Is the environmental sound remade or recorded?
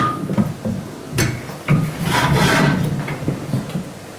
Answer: recorded